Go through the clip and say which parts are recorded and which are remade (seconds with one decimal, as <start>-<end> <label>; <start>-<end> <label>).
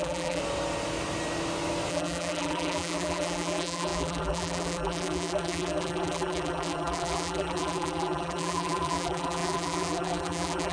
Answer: 0.0-0.4 remade; 0.4-1.9 recorded; 1.9-10.7 remade